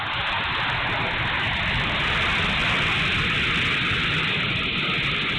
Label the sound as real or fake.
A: real